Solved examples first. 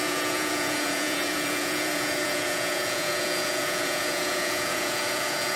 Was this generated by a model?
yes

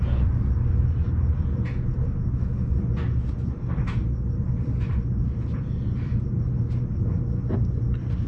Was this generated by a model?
no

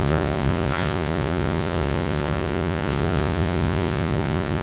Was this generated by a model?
yes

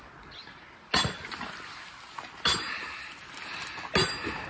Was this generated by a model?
no